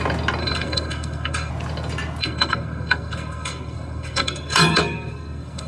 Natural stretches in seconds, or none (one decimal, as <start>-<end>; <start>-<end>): 0.0-0.4; 1.5-2.2